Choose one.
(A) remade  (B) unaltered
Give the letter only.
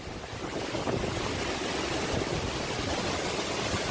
B